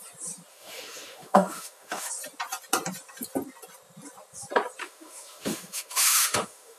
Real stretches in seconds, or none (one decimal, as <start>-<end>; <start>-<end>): 0.0-0.5; 2.1-4.8